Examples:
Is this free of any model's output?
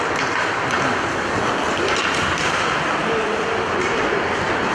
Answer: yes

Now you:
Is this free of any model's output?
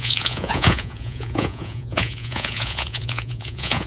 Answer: no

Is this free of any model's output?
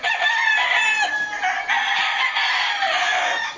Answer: yes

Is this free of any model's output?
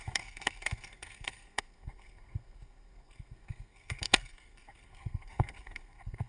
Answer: no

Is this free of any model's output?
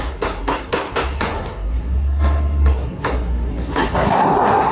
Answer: no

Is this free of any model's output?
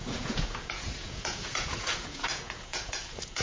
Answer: no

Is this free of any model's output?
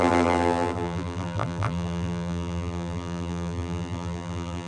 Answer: no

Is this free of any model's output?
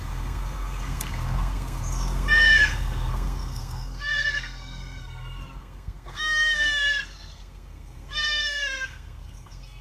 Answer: no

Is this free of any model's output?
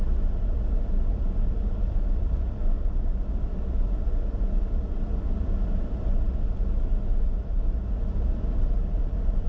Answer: yes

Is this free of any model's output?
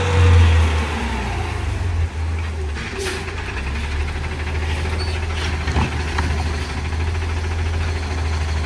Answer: yes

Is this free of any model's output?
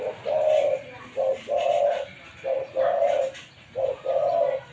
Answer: yes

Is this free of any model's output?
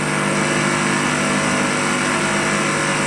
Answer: yes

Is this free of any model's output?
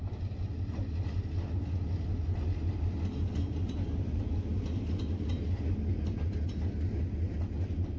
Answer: yes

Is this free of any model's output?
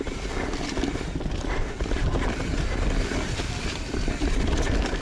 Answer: yes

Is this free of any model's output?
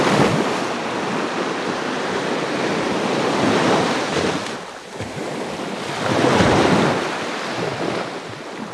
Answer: yes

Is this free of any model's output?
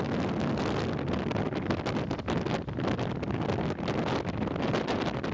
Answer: yes